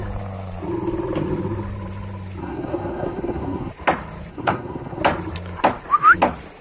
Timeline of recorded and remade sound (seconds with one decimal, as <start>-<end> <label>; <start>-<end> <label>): 0.0-2.4 recorded; 2.4-3.7 remade; 3.7-4.3 recorded; 4.3-5.0 remade; 5.0-6.6 recorded